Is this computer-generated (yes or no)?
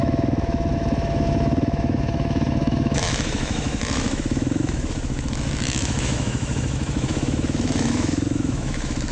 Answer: yes